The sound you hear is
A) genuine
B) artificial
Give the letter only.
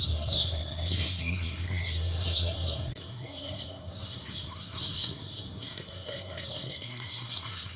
B